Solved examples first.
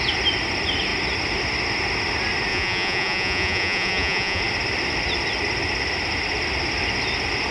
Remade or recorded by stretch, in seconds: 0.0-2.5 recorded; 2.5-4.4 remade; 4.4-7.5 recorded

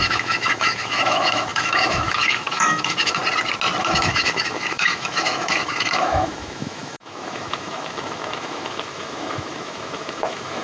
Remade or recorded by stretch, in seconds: 0.0-3.2 remade; 3.2-3.8 recorded; 3.8-10.6 remade

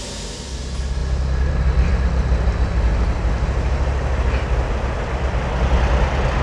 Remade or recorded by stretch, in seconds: 0.0-6.4 recorded

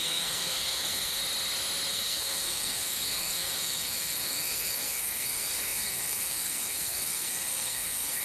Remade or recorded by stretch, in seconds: 0.0-1.2 remade; 1.2-1.9 recorded; 1.9-8.2 remade

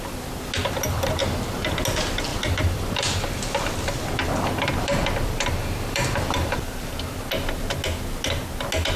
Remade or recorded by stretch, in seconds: 0.0-0.6 recorded; 0.6-1.2 remade; 1.2-2.3 recorded; 2.3-7.0 remade; 7.0-9.0 recorded

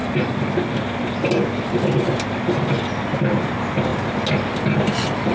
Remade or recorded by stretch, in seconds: 0.0-5.3 recorded

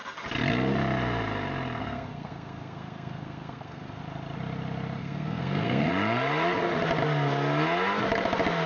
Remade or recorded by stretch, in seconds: 0.0-1.8 recorded; 1.8-4.0 remade; 4.0-5.0 recorded; 5.0-5.9 remade; 5.9-8.7 recorded